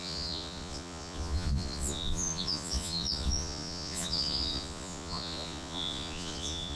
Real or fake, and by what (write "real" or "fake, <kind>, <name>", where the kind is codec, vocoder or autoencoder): fake, vocoder, Vocos